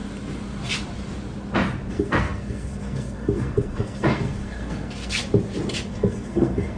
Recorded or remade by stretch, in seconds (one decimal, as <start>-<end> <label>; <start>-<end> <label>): 0.0-1.9 recorded; 1.9-5.2 remade; 5.2-5.9 recorded; 5.9-6.8 remade